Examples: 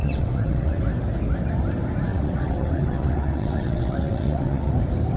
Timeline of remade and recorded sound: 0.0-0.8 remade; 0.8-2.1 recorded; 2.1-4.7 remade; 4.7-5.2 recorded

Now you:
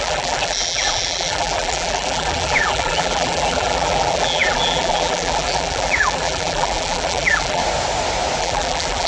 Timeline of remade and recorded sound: 0.0-7.6 remade; 7.6-8.4 recorded; 8.4-9.1 remade

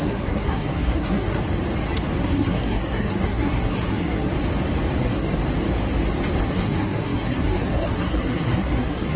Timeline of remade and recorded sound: 0.0-1.4 remade; 1.4-2.2 recorded; 2.2-4.3 remade; 4.3-5.0 recorded; 5.0-5.4 remade; 5.4-6.4 recorded; 6.4-9.2 remade

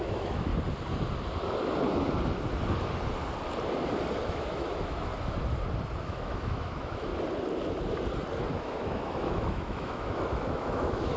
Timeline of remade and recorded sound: 0.0-0.5 remade; 0.5-4.3 recorded; 4.3-5.1 remade; 5.1-6.0 recorded; 6.0-7.1 remade; 7.1-8.6 recorded; 8.6-11.2 remade

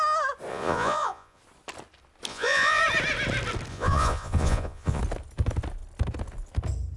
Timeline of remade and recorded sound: 0.0-0.5 recorded; 0.5-1.4 remade; 1.4-2.3 recorded; 2.3-2.8 remade; 2.8-3.7 recorded; 3.7-5.0 remade; 5.0-7.0 recorded